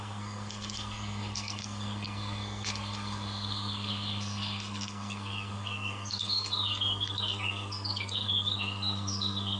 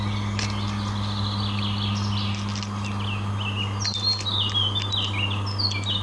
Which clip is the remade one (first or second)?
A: first